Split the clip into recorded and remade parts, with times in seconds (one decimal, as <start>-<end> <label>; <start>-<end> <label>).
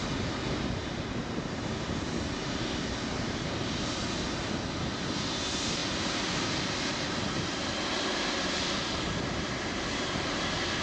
0.0-10.8 recorded